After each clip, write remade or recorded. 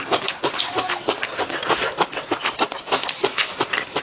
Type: recorded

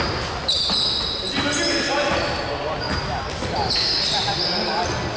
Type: recorded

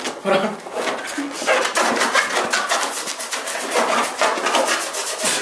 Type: recorded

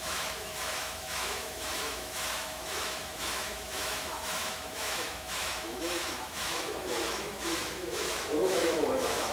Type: remade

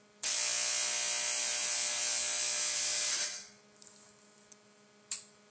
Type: recorded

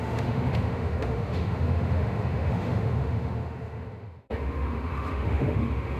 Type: remade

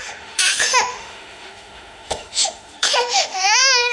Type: remade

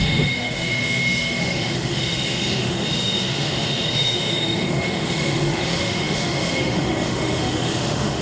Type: remade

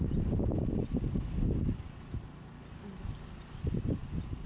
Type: recorded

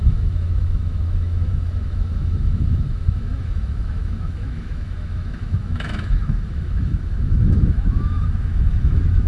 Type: remade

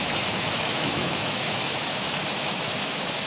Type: remade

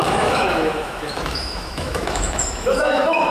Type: remade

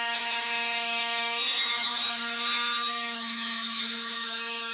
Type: remade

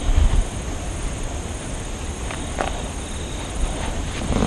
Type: recorded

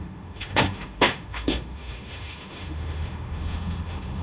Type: remade